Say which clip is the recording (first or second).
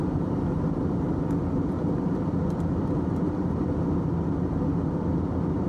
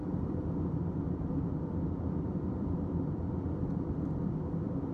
first